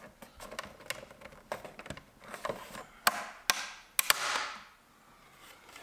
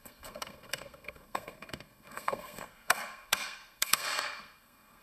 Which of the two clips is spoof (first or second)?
second